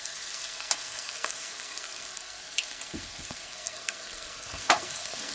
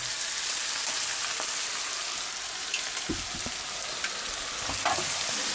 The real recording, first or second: second